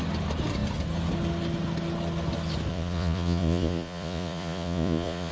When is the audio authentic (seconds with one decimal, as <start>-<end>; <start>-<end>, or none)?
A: 0.0-2.7